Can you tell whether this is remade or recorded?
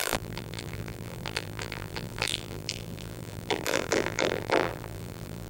remade